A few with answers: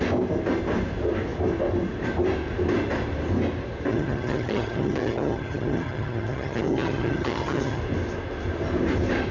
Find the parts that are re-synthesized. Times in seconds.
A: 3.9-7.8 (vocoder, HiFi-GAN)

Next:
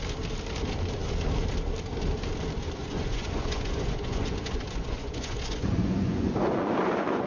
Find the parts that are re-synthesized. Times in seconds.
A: 2.8-7.3 (vocoder, Vocos)

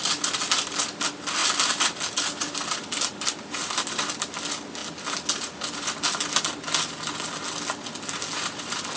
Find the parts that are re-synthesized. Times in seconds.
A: none

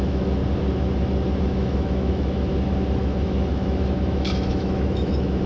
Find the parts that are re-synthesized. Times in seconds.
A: 0.0-0.4 (autoencoder, DAC-VAE); 1.4-2.5; 3.0-5.5

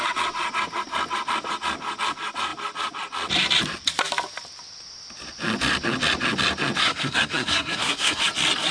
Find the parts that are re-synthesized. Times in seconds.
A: 6.8-8.2 (codec, SNAC)